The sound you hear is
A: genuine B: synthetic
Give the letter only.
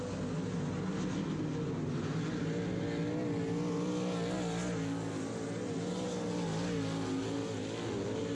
A